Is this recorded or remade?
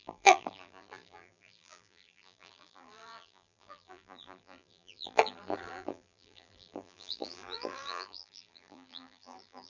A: remade